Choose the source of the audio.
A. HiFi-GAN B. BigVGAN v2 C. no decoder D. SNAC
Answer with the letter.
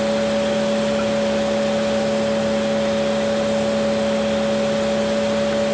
C